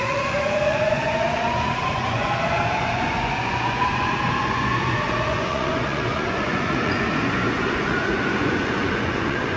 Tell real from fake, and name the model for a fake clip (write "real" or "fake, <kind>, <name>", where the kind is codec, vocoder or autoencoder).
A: fake, vocoder, Vocos